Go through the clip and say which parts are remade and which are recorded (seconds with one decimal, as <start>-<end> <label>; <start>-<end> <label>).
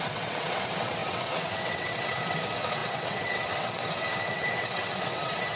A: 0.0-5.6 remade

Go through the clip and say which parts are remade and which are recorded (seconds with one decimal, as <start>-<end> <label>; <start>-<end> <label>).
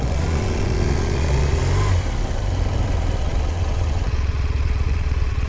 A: 0.0-1.6 remade; 1.6-3.2 recorded; 3.2-5.5 remade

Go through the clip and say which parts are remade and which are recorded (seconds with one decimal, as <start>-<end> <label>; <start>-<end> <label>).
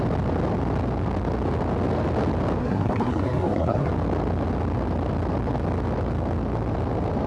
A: 0.0-2.6 recorded; 2.6-3.9 remade; 3.9-7.3 recorded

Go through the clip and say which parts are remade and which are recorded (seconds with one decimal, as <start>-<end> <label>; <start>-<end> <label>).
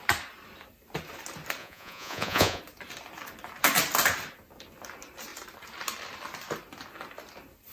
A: 0.0-1.6 recorded; 1.6-2.6 remade; 2.6-7.7 recorded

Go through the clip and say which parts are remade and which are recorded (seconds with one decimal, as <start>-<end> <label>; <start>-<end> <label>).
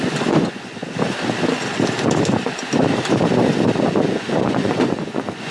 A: 0.0-0.8 remade; 0.8-4.1 recorded; 4.1-5.5 remade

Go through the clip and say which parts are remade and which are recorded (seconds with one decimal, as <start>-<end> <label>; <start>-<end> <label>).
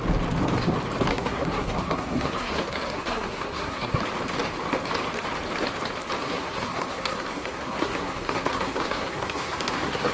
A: 0.0-1.1 recorded; 1.1-4.0 remade; 4.0-6.2 recorded; 6.2-10.1 remade